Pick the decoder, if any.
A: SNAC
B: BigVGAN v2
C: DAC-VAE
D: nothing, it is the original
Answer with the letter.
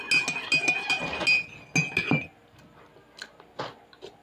D